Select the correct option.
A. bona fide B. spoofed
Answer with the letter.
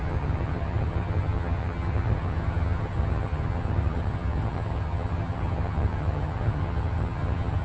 B